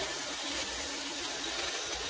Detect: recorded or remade recorded